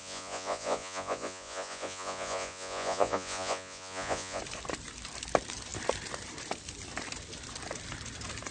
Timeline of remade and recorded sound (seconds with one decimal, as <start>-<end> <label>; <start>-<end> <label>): 0.0-4.4 remade; 4.4-8.5 recorded